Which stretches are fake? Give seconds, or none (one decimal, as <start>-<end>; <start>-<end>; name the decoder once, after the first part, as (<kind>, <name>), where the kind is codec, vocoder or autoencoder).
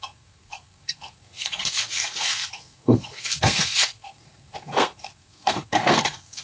0.0-6.4 (codec, SNAC)